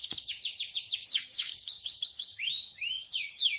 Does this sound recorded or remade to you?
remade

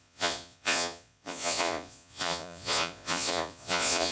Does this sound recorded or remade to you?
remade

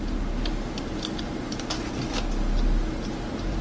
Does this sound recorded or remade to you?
recorded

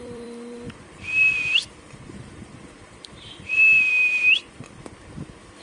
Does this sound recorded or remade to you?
remade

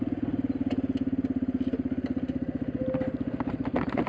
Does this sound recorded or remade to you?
recorded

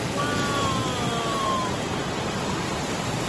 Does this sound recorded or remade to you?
recorded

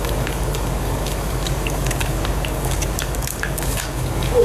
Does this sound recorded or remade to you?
remade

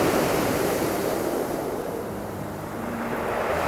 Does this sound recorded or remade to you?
remade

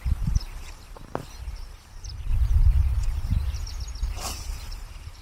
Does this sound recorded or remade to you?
remade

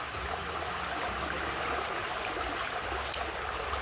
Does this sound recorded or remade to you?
recorded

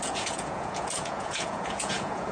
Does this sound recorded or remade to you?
remade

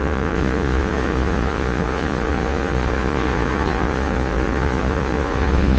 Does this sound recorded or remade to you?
remade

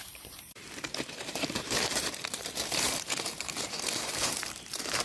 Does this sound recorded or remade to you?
remade